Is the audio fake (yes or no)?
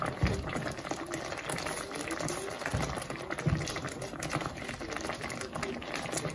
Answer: no